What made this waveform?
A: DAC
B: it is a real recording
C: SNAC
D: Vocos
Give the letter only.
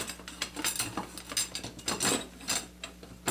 B